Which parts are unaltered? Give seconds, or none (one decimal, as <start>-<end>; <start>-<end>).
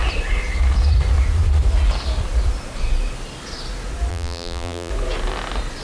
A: 0.0-4.1; 4.9-5.8